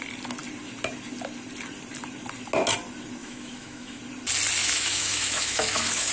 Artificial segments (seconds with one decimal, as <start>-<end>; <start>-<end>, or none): 3.2-4.0; 4.6-6.1